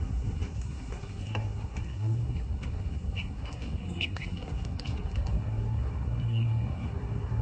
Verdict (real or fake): fake